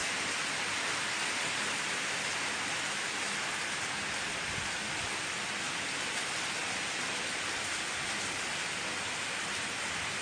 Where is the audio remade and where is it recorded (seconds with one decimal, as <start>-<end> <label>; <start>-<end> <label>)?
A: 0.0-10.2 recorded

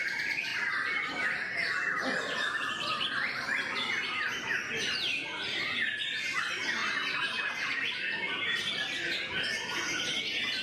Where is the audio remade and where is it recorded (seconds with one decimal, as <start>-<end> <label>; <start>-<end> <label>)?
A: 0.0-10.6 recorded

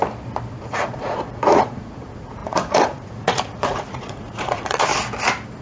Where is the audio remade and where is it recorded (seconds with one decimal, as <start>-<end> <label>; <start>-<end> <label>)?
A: 0.0-0.5 recorded; 0.5-4.9 remade; 4.9-5.6 recorded